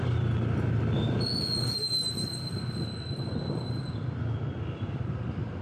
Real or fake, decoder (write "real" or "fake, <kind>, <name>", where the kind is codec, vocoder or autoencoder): real